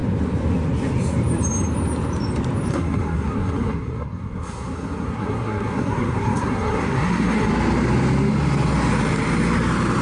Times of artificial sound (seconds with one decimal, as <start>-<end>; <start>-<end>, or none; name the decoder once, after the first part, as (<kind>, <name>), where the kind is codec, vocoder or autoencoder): 2.7-7.5 (codec, SNAC)